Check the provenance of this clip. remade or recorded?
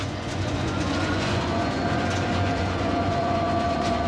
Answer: remade